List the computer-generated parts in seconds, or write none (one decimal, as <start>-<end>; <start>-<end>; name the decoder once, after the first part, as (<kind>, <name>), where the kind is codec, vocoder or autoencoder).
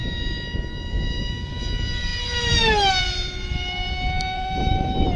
0.0-5.2 (vocoder, BigVGAN v2)